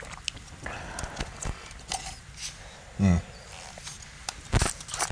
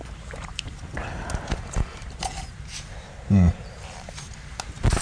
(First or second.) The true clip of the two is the first